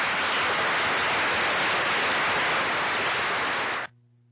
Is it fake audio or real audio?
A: real